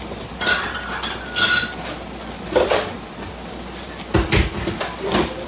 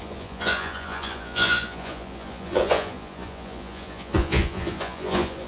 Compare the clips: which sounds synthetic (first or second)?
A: second